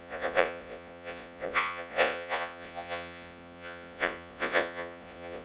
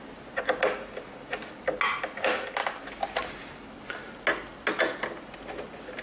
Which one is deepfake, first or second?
first